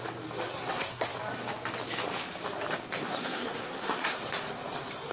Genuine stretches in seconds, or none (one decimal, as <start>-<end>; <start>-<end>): 0.0-0.5; 1.1-3.0; 4.2-5.1